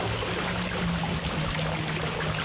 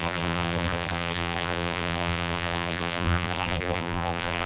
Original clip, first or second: first